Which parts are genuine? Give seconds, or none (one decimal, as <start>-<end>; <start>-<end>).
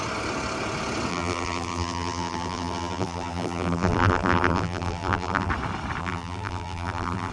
0.0-1.1; 5.5-6.0